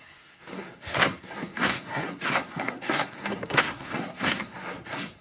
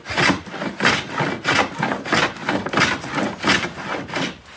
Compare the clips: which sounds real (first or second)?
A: second